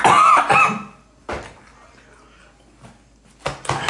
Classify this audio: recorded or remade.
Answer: recorded